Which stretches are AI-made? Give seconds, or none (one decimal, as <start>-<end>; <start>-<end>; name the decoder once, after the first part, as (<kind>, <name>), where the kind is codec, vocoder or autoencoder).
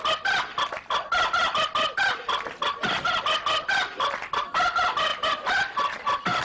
none